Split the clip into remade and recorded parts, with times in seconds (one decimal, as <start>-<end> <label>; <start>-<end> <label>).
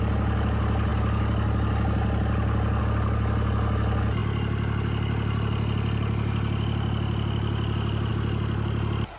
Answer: 0.0-9.2 recorded